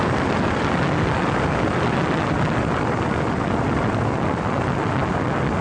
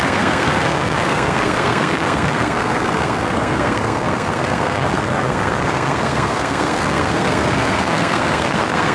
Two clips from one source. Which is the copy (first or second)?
second